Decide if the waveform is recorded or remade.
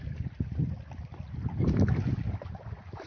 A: recorded